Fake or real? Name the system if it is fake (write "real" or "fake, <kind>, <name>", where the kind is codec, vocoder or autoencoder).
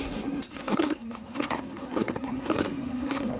fake, codec, SNAC